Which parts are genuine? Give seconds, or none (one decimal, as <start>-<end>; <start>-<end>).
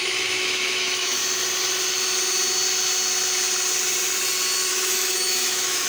1.2-4.7